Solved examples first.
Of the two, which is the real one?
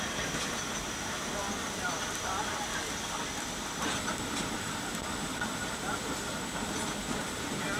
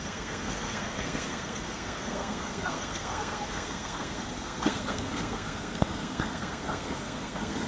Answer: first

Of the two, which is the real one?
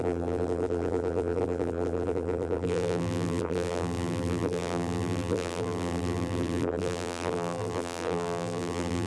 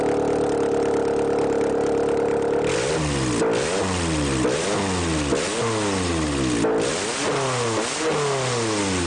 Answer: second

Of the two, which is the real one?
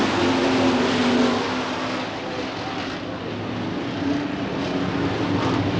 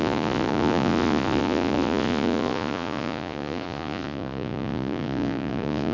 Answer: first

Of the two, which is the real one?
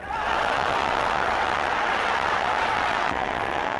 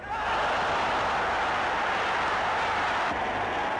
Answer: second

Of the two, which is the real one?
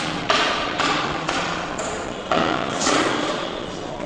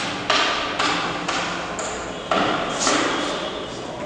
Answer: second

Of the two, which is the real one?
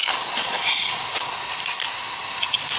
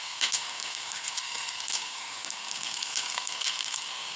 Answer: first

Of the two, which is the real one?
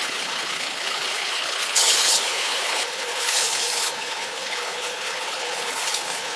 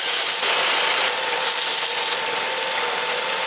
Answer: second